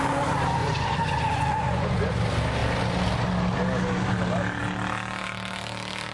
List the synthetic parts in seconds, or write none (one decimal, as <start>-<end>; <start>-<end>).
0.6-2.1